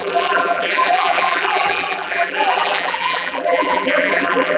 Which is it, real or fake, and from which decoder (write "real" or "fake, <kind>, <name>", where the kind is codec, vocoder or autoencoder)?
fake, vocoder, BigVGAN v2